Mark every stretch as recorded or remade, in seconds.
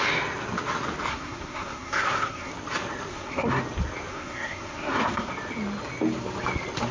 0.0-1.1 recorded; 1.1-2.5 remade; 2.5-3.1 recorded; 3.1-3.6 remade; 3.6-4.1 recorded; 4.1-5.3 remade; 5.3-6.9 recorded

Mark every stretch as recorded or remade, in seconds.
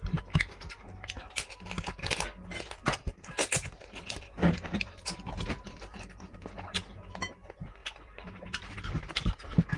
0.0-2.8 recorded; 2.8-7.0 remade; 7.0-7.8 recorded; 7.8-8.7 remade; 8.7-9.8 recorded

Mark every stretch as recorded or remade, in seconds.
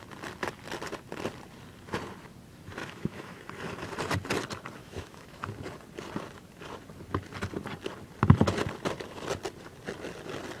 0.0-2.8 recorded; 2.8-3.4 remade; 3.4-4.8 recorded; 4.8-5.4 remade; 5.4-10.6 recorded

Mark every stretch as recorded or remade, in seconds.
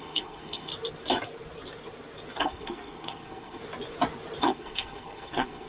0.0-0.7 remade; 0.7-2.4 recorded; 2.4-3.6 remade; 3.6-4.4 recorded; 4.4-5.7 remade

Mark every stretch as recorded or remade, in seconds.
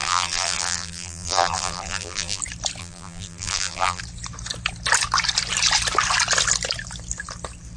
0.0-2.4 remade; 2.4-2.8 recorded; 2.8-4.0 remade; 4.0-7.8 recorded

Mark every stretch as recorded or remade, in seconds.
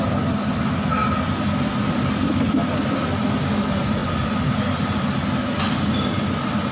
0.0-6.7 recorded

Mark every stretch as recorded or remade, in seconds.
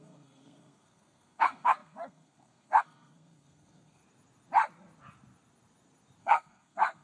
0.0-4.0 remade; 4.0-6.2 recorded; 6.2-7.0 remade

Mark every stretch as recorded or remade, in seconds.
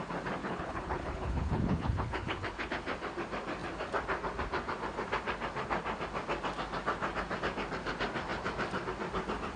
0.0-0.4 recorded; 0.4-2.7 remade; 2.7-9.6 recorded